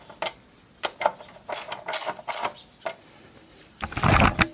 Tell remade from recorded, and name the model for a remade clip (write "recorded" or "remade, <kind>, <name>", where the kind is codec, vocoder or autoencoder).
recorded